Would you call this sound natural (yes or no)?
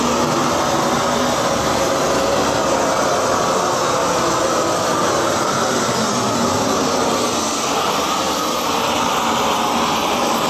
yes